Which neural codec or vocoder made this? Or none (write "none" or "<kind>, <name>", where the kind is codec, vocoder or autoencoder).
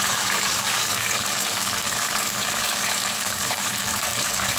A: codec, DAC